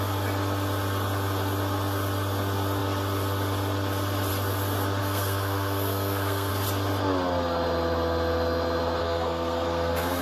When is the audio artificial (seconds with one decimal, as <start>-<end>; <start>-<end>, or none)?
5.0-6.5; 9.0-10.2